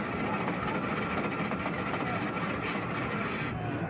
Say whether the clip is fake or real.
real